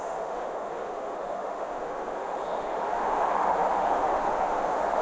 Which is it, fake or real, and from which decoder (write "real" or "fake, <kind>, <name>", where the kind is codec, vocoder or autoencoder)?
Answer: fake, autoencoder, DAC-VAE